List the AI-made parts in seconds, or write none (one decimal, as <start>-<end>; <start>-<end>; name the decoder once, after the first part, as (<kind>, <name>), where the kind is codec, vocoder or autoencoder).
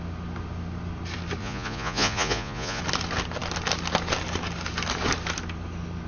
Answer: 1.4-2.8 (vocoder, Vocos)